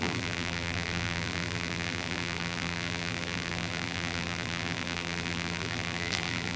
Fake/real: fake